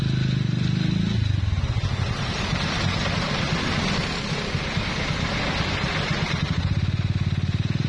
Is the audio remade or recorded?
recorded